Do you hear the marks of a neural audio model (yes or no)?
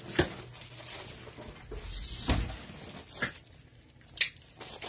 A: no